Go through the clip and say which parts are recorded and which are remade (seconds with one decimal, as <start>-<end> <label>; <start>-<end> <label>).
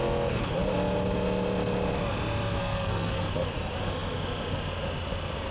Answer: 0.0-2.6 recorded; 2.6-3.2 remade; 3.2-5.5 recorded